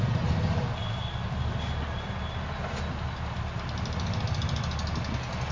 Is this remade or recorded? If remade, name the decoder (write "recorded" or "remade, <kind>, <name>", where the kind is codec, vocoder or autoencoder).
recorded